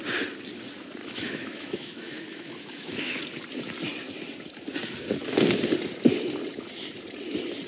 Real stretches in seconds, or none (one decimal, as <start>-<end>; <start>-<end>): 0.0-1.0; 3.2-7.7